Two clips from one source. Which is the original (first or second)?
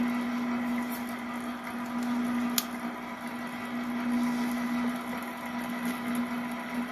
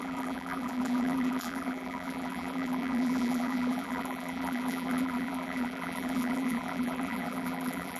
first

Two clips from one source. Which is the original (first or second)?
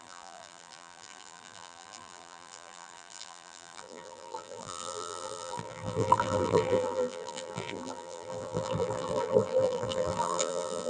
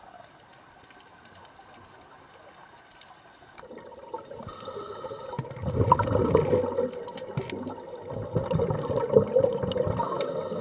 second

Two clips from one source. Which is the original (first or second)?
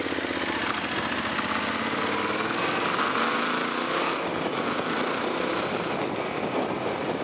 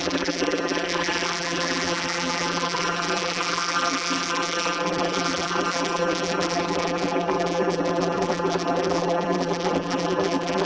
first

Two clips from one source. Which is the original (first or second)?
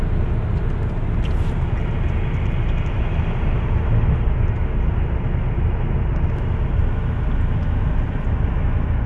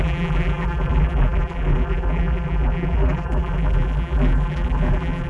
first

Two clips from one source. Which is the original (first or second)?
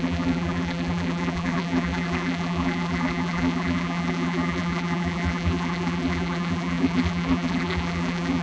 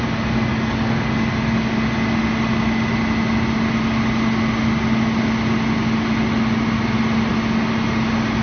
second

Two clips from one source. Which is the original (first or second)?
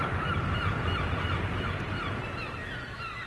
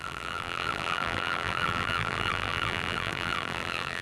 first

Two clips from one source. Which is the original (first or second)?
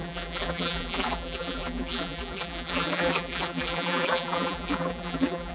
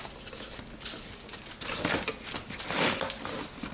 second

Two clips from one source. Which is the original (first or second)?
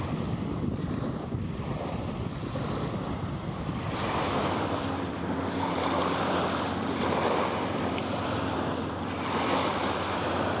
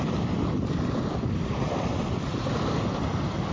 second